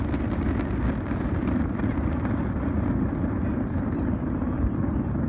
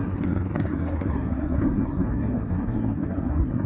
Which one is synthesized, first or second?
second